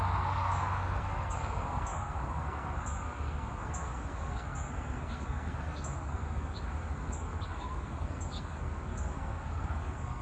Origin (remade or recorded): remade